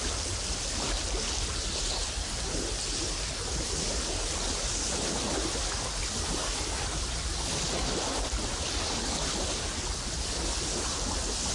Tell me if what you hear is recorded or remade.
recorded